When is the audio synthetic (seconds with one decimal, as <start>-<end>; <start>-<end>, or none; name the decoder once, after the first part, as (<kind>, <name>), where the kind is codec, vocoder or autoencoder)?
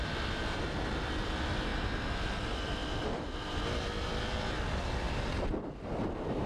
none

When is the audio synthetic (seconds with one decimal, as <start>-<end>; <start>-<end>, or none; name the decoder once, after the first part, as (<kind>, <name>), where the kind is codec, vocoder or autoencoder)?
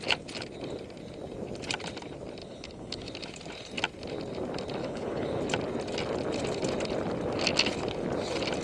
2.4-3.1 (codec, HILCodec); 4.8-5.4